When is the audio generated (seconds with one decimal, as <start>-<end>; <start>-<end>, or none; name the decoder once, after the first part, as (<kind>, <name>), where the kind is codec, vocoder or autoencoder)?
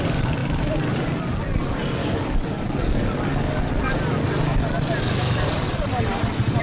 2.0-3.6 (codec, DAC)